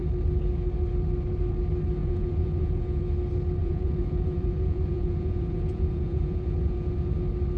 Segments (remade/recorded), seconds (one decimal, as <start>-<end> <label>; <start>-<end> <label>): 0.0-2.0 recorded; 2.0-3.0 remade; 3.0-3.6 recorded; 3.6-7.1 remade; 7.1-7.6 recorded

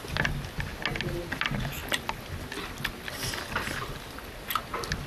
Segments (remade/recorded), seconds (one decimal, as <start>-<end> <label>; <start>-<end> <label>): 0.0-5.1 recorded

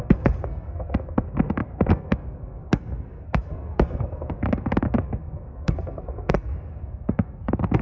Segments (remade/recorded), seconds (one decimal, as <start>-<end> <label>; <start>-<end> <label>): 0.0-7.8 remade

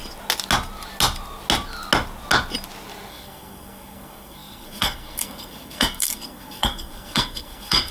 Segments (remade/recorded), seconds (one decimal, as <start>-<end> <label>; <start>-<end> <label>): 0.0-3.1 recorded; 3.1-7.9 remade

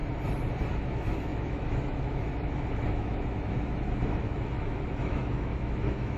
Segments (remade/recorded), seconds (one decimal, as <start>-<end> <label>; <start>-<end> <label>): 0.0-0.7 recorded; 0.7-6.2 remade

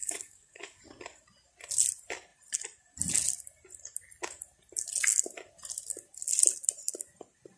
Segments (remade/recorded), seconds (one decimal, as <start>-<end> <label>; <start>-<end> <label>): 0.0-0.8 remade; 0.8-7.6 recorded

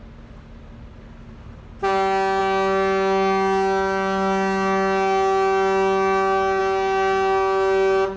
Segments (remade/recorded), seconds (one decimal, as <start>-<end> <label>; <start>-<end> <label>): 0.0-8.2 recorded

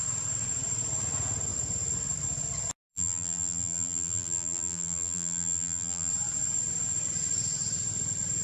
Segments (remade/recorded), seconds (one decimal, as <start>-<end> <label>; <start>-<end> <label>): 0.0-2.9 recorded; 2.9-6.1 remade; 6.1-8.4 recorded